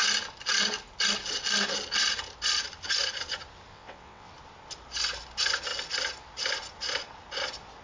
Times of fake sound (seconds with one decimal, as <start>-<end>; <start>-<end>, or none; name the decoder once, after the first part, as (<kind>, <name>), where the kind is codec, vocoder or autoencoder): 3.7-4.3 (vocoder, WaveNeXt)